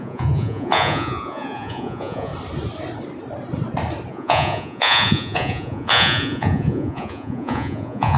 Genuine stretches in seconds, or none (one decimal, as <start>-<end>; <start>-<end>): 2.3-4.1